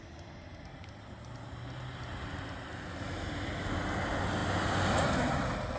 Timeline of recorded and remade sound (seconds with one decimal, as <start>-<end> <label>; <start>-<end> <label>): 0.0-5.8 recorded